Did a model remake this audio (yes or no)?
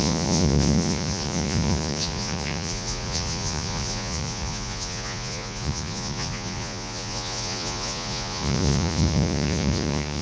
yes